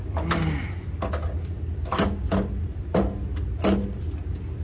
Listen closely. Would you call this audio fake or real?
real